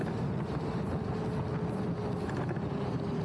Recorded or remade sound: recorded